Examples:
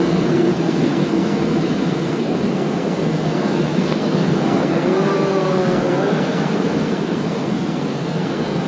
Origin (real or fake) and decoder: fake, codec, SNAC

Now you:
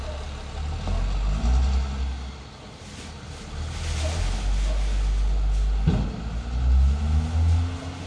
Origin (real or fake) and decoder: real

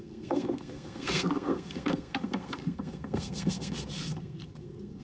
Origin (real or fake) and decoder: fake, codec, SNAC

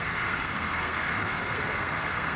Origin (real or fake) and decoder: fake, codec, SNAC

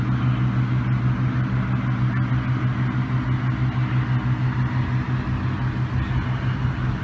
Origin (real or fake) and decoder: real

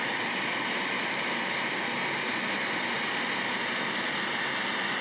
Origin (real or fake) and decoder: real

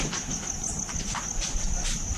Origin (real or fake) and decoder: real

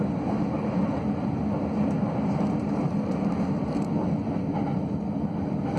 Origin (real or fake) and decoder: real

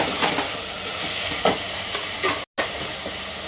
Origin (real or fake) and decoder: real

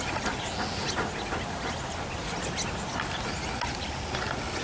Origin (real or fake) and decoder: real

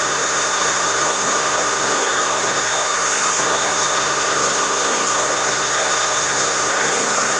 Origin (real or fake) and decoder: fake, codec, SNAC